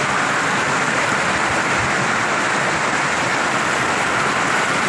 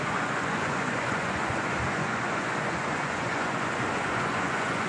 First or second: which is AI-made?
second